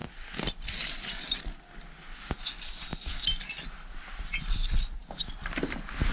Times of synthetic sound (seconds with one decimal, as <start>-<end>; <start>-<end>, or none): none